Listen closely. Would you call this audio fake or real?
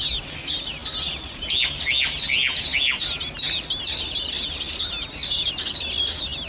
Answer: real